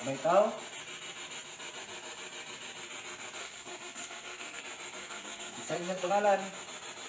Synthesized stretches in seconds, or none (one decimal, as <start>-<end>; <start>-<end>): 3.4-4.6; 5.0-6.1